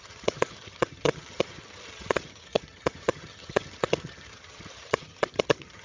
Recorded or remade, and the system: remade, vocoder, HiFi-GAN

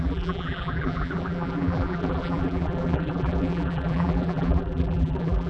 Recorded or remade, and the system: remade, vocoder, BigVGAN v2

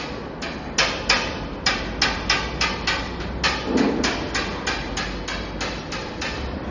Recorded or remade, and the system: recorded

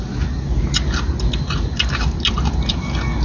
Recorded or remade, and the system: recorded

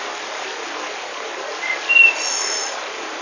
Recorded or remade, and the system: recorded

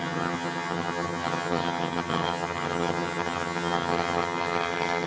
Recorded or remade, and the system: remade, vocoder, HiFi-GAN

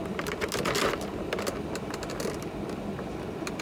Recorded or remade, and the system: recorded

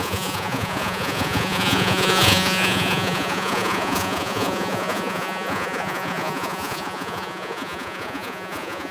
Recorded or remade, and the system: remade, vocoder, Vocos